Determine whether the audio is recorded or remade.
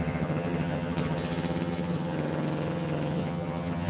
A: remade